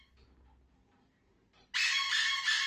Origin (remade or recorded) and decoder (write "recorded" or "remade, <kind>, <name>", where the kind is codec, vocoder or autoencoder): recorded